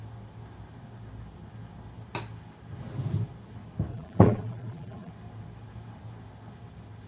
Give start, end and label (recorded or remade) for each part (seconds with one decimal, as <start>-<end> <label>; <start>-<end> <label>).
0.0-3.9 recorded; 3.9-5.1 remade; 5.1-7.1 recorded